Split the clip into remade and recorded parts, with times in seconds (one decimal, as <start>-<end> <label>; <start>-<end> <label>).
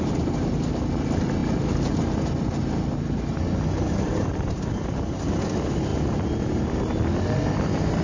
0.0-8.0 recorded